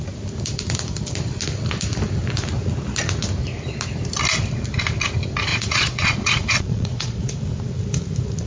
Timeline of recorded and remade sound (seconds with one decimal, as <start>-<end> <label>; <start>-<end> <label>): 0.0-5.5 recorded; 5.5-7.3 remade; 7.3-8.5 recorded